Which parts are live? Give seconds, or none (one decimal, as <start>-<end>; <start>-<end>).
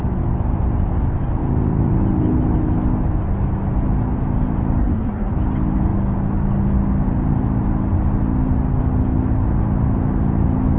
0.0-4.8; 5.3-10.8